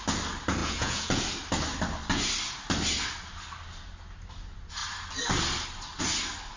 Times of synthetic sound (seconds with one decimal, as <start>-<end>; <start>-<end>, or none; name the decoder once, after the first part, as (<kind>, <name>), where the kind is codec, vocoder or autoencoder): 0.6-1.2 (vocoder, Vocos)